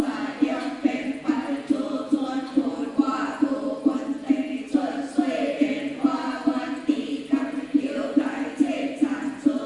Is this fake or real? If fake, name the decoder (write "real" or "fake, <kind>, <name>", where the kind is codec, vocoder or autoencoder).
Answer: fake, vocoder, Vocos